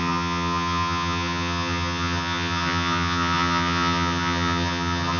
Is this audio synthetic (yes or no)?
yes